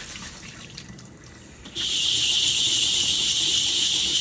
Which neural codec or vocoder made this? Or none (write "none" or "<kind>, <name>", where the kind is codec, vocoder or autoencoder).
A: none